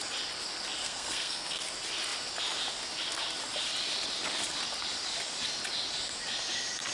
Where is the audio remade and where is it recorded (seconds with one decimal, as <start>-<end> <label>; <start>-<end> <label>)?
0.0-0.8 recorded; 0.8-1.6 remade; 1.6-6.9 recorded